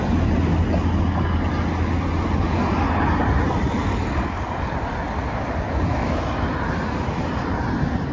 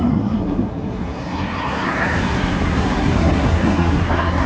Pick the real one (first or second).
first